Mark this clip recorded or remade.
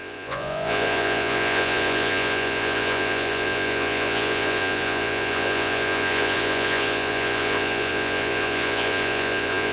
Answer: remade